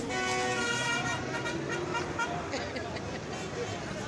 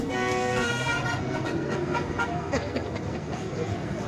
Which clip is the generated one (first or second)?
second